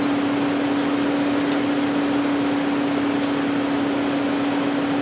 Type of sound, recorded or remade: recorded